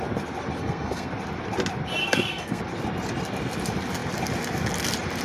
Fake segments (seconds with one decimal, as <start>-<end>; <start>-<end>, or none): 0.6-1.1; 2.0-2.6